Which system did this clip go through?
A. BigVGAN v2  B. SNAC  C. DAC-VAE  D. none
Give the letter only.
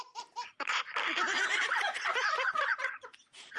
A